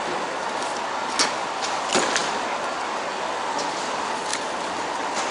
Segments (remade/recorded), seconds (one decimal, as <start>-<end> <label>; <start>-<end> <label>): 0.0-5.3 recorded